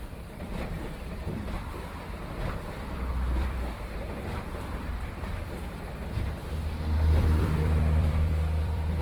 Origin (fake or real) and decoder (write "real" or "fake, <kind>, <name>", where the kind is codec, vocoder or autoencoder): fake, vocoder, BigVGAN v2